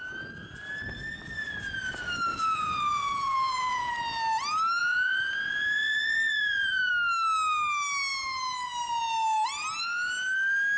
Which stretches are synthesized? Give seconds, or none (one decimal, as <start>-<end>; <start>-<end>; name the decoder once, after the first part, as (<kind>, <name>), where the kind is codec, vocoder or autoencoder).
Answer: 2.3-3.9 (vocoder, Vocos); 4.8-6.9